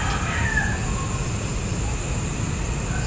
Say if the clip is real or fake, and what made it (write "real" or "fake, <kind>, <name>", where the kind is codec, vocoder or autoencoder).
real